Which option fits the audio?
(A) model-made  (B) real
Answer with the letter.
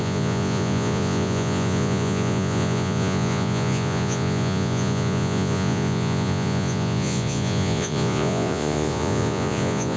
A